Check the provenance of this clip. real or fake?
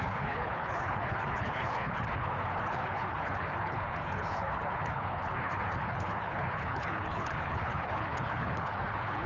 fake